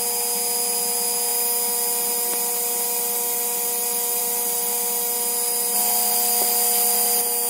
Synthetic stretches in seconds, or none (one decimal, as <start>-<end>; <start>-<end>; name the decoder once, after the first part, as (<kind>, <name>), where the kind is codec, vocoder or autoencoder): none